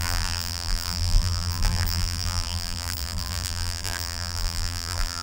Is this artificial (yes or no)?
yes